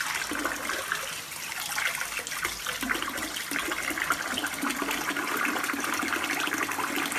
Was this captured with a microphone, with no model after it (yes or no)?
yes